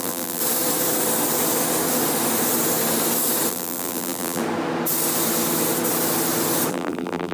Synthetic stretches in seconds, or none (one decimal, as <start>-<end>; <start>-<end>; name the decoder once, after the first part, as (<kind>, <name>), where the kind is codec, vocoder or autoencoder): 0.0-0.4 (vocoder, BigVGAN v2); 3.5-4.4; 6.7-7.3